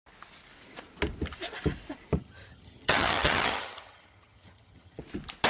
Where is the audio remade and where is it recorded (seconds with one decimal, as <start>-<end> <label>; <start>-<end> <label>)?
0.0-2.2 recorded; 2.2-5.0 remade; 5.0-5.5 recorded